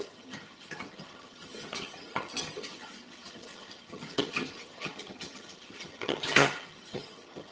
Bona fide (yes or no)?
no